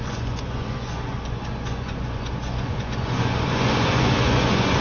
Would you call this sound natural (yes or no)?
no